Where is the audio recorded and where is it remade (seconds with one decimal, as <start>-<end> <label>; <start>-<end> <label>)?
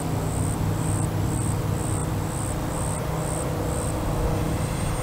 0.0-5.0 recorded